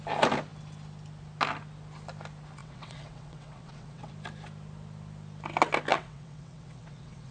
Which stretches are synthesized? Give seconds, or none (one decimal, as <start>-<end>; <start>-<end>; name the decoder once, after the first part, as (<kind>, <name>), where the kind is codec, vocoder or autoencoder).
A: 2.6-4.1 (vocoder, WaveNeXt); 5.9-7.3